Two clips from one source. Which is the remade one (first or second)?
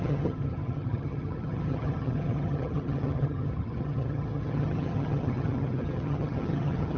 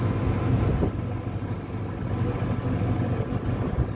first